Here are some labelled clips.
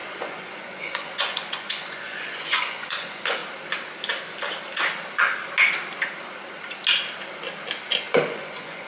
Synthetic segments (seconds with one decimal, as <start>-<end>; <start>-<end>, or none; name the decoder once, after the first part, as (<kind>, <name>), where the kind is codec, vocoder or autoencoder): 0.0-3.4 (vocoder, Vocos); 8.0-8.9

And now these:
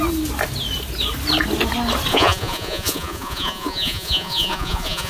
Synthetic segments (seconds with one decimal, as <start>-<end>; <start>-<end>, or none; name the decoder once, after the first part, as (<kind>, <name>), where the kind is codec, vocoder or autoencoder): 2.1-5.1 (vocoder, Vocos)

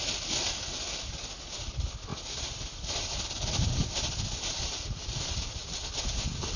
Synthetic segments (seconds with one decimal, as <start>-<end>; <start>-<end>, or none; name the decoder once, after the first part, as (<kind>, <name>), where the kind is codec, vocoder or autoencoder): none

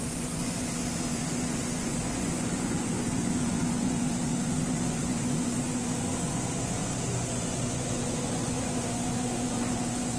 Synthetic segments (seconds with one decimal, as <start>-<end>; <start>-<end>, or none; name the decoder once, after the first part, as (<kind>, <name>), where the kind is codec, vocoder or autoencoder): 0.0-10.2 (vocoder, Vocos)